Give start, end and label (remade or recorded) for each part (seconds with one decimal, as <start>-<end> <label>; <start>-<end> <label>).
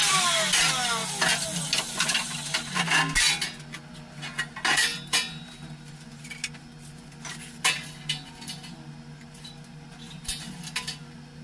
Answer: 0.0-11.4 recorded